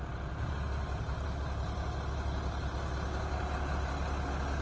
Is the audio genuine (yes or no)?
yes